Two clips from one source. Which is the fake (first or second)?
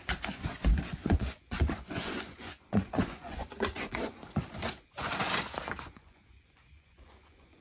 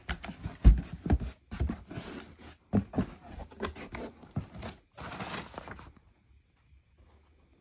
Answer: first